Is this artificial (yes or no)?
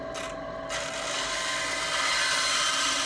no